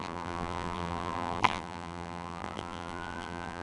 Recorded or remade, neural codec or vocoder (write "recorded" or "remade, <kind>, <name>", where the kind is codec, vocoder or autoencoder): remade, vocoder, BigVGAN v2